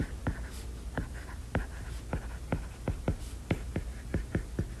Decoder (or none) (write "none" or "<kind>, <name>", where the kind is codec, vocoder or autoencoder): none